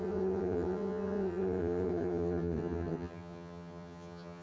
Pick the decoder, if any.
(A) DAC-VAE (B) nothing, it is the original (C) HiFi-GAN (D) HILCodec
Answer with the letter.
C